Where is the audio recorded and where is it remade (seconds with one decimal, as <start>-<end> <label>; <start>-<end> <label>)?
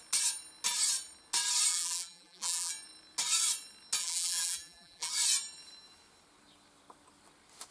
0.0-1.7 recorded; 1.7-2.7 remade; 2.7-4.0 recorded; 4.0-5.1 remade; 5.1-7.7 recorded